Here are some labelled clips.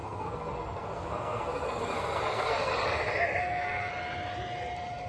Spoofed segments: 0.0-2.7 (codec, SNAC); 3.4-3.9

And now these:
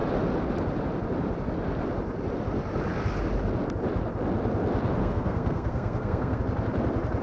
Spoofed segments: 5.0-6.4 (codec, SNAC)

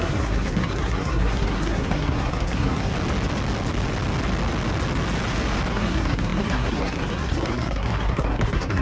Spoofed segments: 0.0-2.9 (codec, SNAC); 5.7-8.8

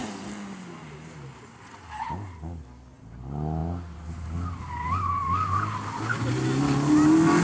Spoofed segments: none